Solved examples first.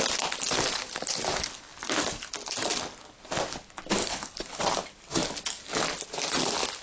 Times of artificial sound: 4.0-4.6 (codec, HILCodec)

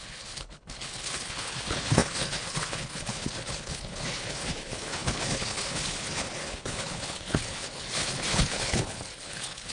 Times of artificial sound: 0.0-9.7 (codec, HILCodec)

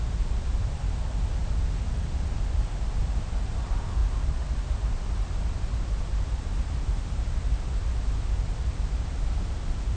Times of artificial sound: none

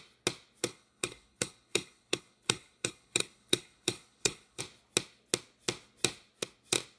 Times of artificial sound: 0.6-4.6 (codec, HILCodec)